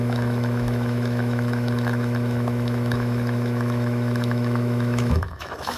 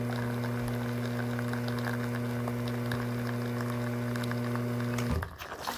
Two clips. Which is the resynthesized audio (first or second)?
first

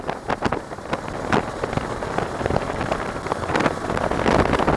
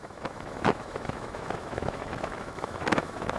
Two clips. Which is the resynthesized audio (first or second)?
second